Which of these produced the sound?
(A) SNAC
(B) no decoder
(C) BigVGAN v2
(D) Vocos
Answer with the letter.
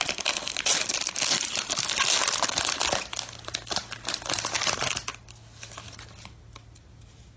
B